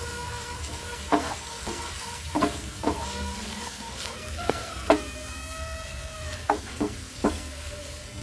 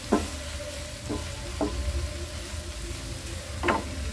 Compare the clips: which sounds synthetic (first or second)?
first